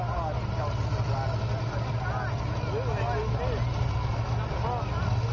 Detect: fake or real real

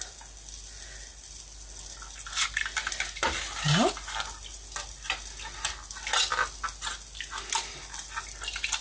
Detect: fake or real real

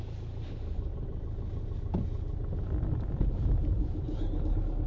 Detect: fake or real real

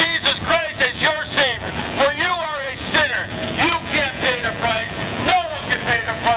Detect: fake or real fake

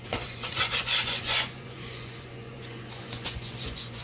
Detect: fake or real fake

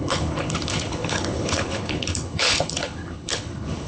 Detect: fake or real fake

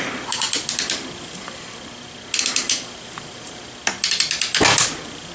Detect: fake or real real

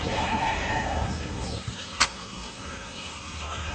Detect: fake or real fake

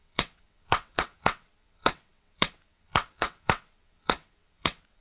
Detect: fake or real fake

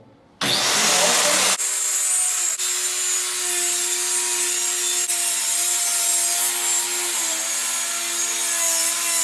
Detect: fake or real real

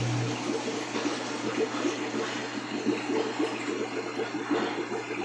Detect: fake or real real